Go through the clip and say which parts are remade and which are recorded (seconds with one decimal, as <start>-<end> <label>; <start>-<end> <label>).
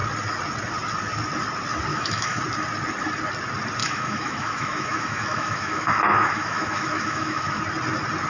0.0-1.9 recorded; 1.9-2.4 remade; 2.4-3.8 recorded; 3.8-7.6 remade; 7.6-8.3 recorded